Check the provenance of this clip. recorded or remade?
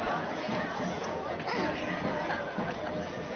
remade